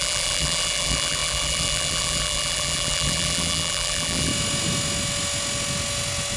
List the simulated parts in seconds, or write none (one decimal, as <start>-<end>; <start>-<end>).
0.0-4.3